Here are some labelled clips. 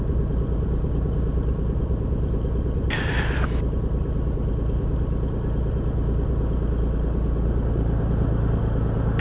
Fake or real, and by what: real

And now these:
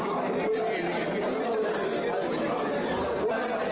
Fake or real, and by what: real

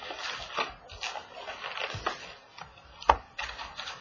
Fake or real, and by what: real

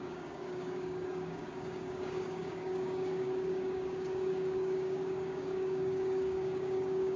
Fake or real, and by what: fake, codec, DAC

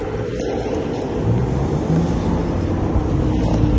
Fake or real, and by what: real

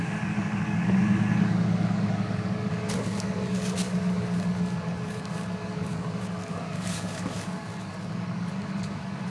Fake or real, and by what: fake, codec, DAC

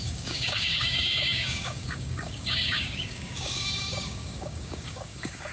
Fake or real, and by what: fake, codec, DAC